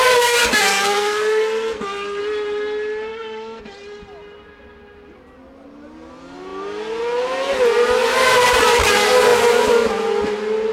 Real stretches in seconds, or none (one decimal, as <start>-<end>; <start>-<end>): 0.0-0.4; 2.2-3.1; 3.6-10.7